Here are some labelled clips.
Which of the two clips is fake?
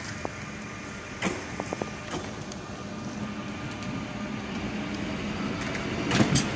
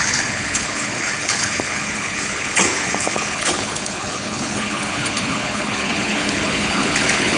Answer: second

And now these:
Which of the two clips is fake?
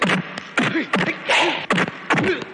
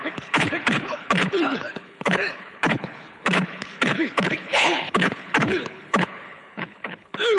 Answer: second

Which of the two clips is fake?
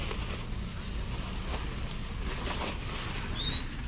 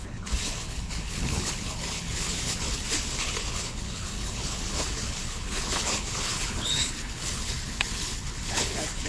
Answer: second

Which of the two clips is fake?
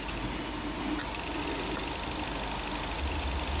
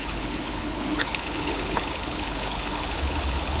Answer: second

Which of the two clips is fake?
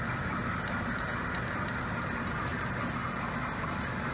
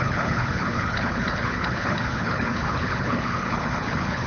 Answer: second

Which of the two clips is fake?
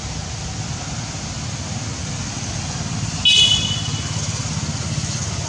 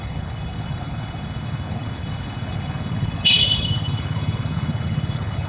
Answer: second